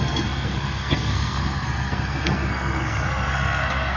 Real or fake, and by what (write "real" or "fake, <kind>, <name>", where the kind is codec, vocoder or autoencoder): fake, codec, SNAC